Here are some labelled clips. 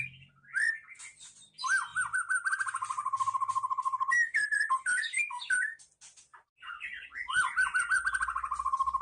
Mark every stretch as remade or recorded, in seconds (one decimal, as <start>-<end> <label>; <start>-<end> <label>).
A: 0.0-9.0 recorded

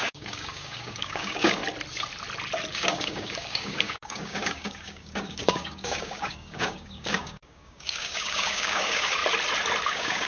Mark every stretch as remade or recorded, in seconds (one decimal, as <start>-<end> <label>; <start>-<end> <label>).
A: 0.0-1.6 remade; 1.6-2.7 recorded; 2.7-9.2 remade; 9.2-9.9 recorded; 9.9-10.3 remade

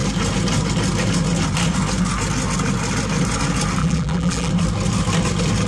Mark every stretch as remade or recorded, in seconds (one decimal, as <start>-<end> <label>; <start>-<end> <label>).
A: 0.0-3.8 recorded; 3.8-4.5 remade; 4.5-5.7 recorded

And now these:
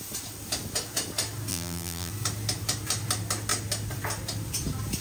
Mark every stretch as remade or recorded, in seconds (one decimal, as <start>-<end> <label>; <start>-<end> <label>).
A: 0.0-1.5 recorded; 1.5-2.1 remade; 2.1-5.0 recorded